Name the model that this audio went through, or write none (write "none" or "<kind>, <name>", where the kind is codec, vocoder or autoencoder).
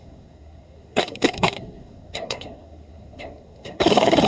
codec, SNAC